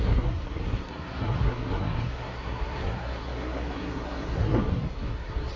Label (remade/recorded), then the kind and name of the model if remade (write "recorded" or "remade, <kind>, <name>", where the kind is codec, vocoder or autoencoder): remade, codec, SNAC